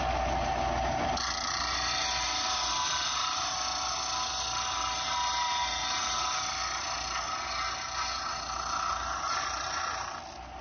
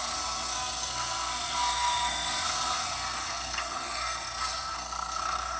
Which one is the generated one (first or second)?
second